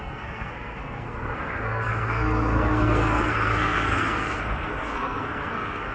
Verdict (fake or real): fake